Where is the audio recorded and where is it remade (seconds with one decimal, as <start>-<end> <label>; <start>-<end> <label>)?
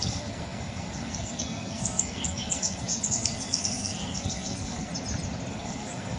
0.0-4.9 remade; 4.9-5.5 recorded; 5.5-6.2 remade